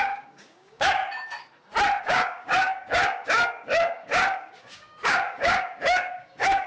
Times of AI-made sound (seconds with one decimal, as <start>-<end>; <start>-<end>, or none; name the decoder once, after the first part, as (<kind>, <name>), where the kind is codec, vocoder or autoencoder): 0.0-1.0 (codec, DAC); 2.0-6.7